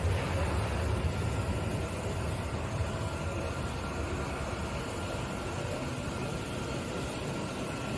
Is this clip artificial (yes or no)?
no